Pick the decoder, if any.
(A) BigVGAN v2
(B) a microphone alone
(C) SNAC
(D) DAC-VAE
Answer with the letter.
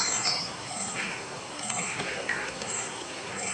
C